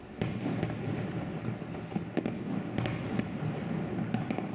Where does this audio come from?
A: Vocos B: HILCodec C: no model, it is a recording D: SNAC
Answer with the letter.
C